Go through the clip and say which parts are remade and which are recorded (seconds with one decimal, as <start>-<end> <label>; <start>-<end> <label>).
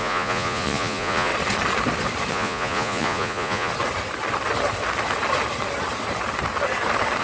0.0-1.3 remade; 1.3-2.3 recorded; 2.3-3.7 remade; 3.7-7.2 recorded